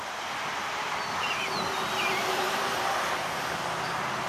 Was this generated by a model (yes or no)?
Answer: no